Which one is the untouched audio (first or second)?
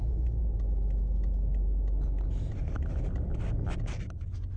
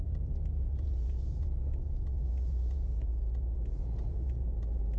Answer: first